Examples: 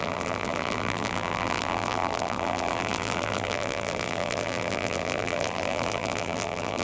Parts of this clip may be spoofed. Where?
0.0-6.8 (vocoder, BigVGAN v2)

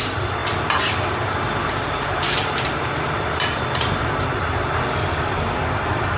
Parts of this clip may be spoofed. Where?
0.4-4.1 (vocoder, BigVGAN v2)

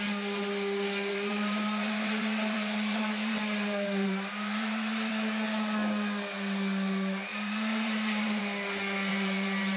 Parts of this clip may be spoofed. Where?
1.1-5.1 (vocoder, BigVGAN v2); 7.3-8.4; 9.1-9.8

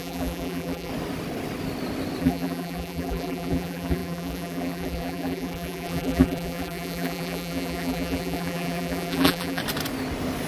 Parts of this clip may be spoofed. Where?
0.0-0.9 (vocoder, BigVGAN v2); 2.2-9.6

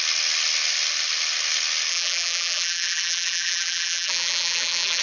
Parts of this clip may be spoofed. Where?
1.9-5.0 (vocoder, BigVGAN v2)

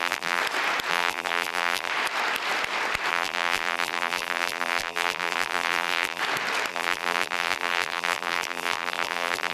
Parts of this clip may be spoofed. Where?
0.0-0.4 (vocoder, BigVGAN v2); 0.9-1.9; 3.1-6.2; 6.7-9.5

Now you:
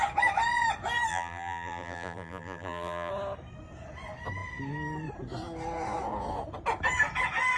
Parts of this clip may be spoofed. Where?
1.1-3.1 (vocoder, BigVGAN v2)